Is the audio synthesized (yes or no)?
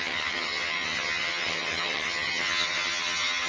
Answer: yes